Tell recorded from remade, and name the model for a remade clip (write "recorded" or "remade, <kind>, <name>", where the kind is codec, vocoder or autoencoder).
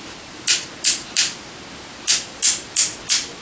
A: recorded